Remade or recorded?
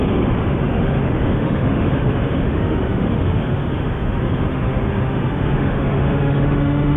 remade